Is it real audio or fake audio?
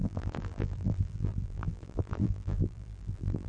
fake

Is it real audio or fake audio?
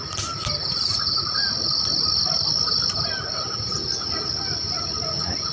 real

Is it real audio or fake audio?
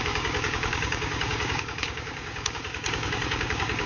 fake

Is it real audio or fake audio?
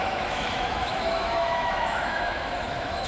fake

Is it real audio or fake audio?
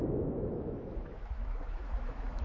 fake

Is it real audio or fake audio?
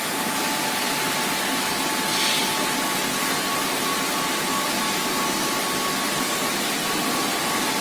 real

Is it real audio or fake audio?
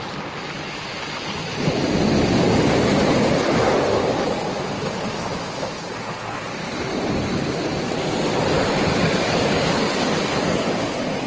real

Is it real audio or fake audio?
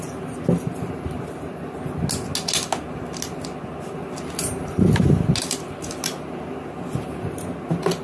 real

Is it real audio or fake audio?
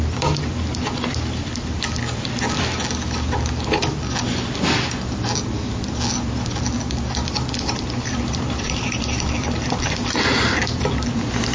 fake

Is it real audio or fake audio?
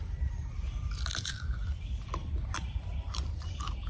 fake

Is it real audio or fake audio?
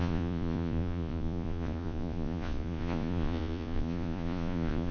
fake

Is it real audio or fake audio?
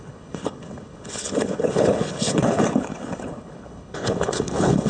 fake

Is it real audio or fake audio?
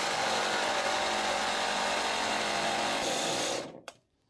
fake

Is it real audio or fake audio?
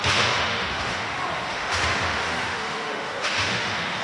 fake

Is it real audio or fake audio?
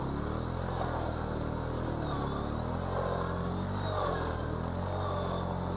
real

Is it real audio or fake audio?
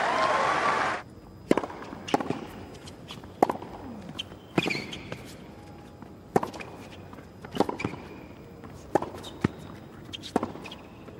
real